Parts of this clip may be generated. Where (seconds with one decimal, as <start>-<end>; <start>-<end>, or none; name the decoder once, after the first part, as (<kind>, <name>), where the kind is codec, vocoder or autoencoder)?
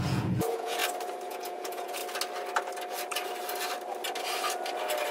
0.0-0.8 (vocoder, Vocos); 1.3-2.0